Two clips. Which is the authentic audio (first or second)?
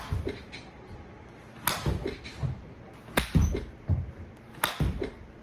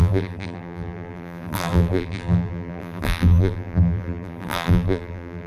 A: first